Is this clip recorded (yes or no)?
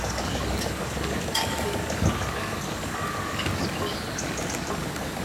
no